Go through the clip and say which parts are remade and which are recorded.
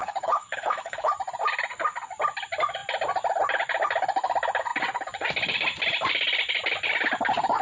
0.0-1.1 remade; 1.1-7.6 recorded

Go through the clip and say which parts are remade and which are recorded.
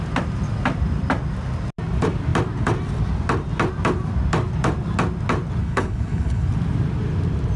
0.0-5.6 recorded; 5.6-6.5 remade; 6.5-7.6 recorded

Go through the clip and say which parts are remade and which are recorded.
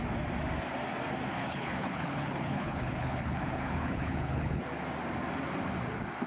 0.0-1.4 recorded; 1.4-4.6 remade; 4.6-6.3 recorded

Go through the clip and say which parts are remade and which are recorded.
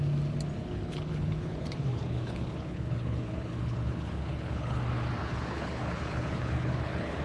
0.0-0.6 recorded; 0.6-4.8 remade; 4.8-5.2 recorded; 5.2-7.2 remade